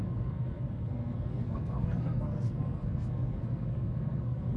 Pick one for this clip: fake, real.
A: fake